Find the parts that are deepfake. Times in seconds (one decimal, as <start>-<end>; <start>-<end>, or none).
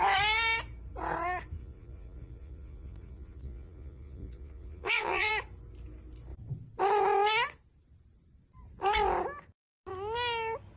1.6-5.3